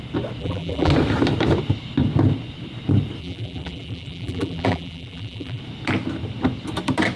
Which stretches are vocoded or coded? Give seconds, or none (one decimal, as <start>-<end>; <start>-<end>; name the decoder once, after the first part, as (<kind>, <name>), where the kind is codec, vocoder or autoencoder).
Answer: 0.4-0.9 (vocoder, BigVGAN v2); 3.2-5.6